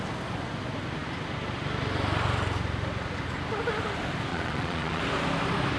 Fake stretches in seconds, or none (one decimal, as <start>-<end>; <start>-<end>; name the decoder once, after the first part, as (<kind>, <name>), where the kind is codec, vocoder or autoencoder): 4.3-5.0 (vocoder, Vocos)